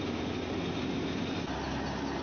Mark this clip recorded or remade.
recorded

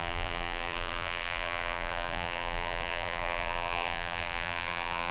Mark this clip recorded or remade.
remade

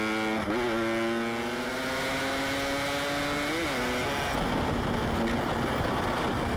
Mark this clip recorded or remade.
recorded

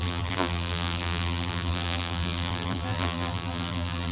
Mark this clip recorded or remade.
remade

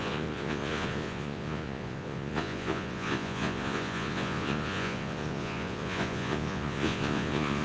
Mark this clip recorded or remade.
remade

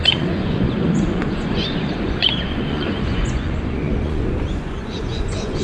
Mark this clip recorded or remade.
remade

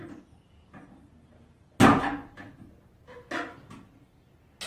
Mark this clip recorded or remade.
recorded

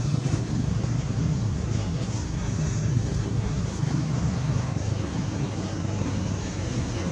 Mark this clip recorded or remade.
remade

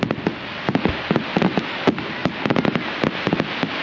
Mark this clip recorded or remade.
recorded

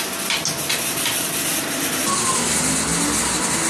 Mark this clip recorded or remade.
recorded